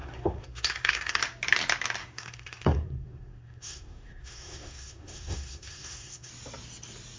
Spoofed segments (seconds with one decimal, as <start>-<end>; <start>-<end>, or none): 0.0-1.2; 2.0-6.3